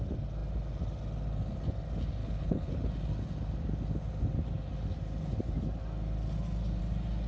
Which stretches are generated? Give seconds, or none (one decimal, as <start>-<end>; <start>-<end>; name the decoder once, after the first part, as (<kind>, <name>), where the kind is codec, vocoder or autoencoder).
2.2-2.9 (codec, HILCodec)